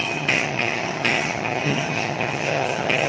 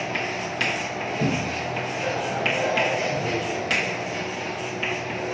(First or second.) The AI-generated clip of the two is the first